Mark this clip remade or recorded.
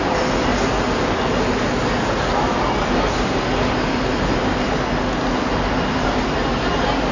recorded